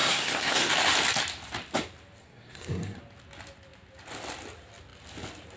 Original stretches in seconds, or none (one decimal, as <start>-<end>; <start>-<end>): 0.7-2.2; 3.0-5.6